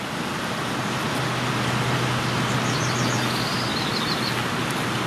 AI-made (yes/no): no